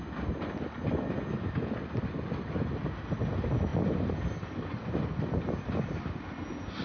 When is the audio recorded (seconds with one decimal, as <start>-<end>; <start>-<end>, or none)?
0.0-3.7; 4.7-6.8